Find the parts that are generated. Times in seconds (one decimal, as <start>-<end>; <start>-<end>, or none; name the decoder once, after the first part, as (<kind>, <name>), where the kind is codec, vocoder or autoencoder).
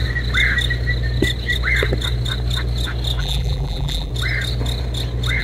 3.2-4.1 (vocoder, BigVGAN v2)